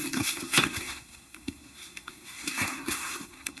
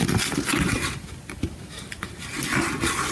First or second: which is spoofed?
first